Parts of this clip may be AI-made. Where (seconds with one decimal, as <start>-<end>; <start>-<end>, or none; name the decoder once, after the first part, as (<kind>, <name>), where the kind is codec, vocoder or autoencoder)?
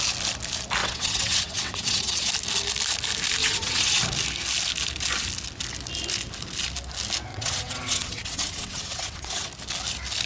0.8-2.3 (vocoder, WaveNeXt); 3.4-4.0; 7.3-9.5